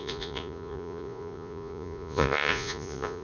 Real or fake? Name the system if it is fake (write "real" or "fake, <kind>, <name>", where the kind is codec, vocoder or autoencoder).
fake, vocoder, Vocos